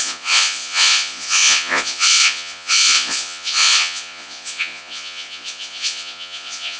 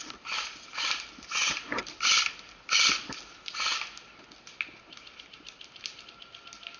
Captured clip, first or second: second